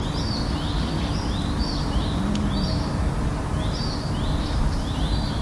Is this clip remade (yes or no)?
no